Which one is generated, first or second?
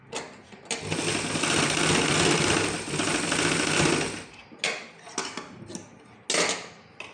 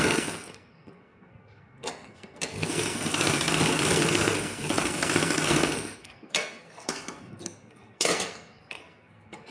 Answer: second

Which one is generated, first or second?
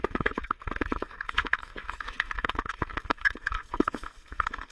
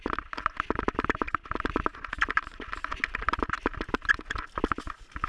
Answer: first